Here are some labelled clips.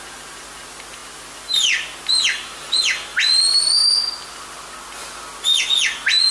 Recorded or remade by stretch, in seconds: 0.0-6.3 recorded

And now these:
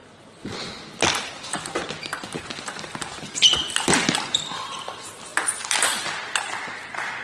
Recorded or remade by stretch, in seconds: 0.0-7.2 recorded